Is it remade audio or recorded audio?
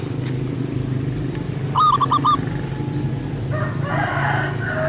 recorded